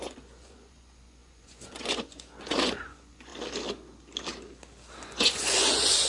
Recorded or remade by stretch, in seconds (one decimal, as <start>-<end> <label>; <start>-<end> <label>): 0.0-3.3 remade; 3.3-5.0 recorded; 5.0-6.1 remade